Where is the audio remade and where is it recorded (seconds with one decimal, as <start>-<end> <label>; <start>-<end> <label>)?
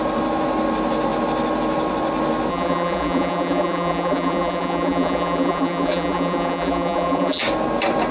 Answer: 0.0-2.5 recorded; 2.5-7.4 remade; 7.4-8.1 recorded